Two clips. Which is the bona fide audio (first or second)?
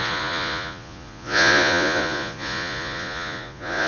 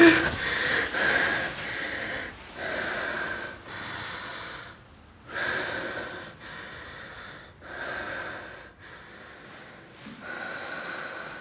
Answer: second